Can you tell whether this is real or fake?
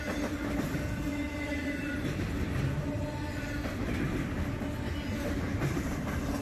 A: real